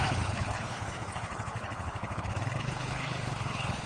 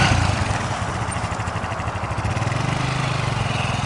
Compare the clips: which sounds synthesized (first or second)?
first